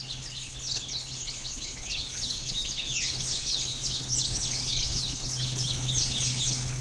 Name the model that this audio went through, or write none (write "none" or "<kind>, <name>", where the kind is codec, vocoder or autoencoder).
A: codec, HILCodec